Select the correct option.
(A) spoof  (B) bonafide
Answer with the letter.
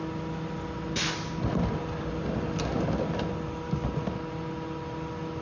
B